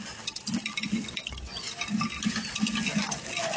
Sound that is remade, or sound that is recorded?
recorded